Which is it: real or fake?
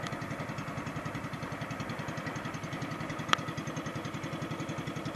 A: real